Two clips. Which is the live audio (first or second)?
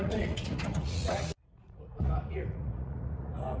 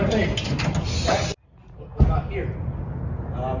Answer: second